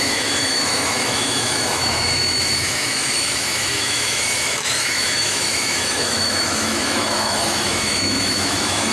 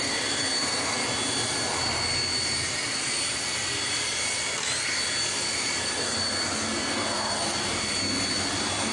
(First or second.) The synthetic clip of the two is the first